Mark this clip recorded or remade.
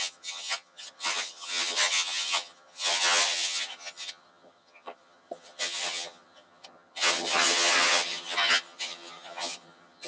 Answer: remade